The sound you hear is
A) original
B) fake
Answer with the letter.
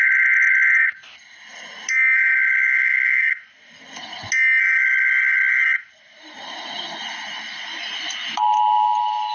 A